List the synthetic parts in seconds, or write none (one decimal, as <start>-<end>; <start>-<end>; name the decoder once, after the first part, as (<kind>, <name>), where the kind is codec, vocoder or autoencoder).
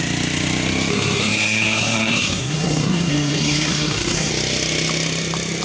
0.9-4.3 (codec, SNAC)